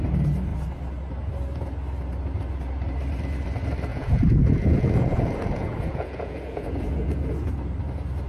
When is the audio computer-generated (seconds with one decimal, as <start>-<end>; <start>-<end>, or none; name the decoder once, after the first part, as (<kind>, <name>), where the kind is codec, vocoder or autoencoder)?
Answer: 3.9-7.5 (vocoder, Vocos)